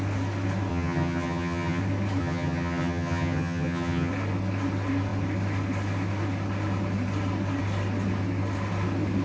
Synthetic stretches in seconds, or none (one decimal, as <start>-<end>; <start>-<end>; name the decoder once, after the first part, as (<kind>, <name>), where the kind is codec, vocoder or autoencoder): 0.7-1.8 (vocoder, HiFi-GAN); 2.2-4.1